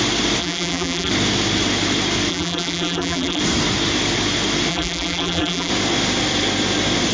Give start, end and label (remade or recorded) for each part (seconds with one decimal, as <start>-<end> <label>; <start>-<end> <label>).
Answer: 0.0-0.4 recorded; 0.4-1.1 remade; 1.1-2.3 recorded; 2.3-3.4 remade; 3.4-4.7 recorded; 4.7-5.7 remade; 5.7-7.1 recorded